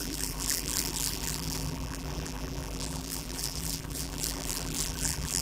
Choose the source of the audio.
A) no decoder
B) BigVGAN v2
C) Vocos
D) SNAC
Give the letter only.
B